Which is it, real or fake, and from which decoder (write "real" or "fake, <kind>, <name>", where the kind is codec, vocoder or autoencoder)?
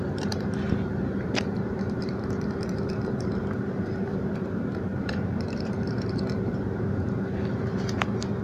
fake, vocoder, BigVGAN v2